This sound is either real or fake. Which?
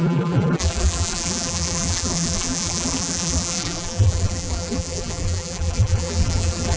fake